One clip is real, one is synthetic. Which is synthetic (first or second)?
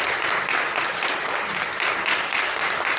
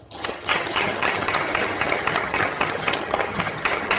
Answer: second